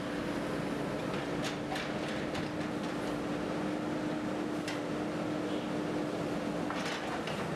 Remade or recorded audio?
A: recorded